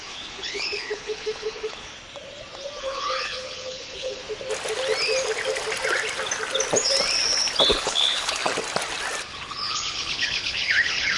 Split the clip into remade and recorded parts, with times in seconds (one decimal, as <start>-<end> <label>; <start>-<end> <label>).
0.0-1.9 remade; 1.9-2.8 recorded; 2.8-4.2 remade; 4.2-7.7 recorded; 7.7-8.4 remade; 8.4-9.3 recorded; 9.3-11.2 remade